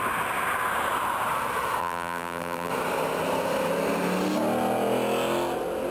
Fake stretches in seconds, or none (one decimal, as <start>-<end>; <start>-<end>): 1.8-2.7